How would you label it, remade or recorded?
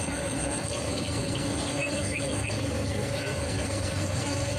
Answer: remade